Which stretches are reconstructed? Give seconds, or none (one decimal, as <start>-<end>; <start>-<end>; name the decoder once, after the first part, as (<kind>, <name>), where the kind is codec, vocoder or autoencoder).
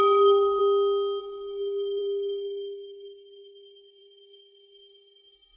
0.0-0.6 (codec, DAC); 1.2-5.6